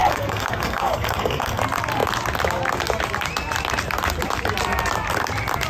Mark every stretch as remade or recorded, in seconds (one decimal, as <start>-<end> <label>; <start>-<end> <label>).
0.0-1.6 remade; 1.6-5.7 recorded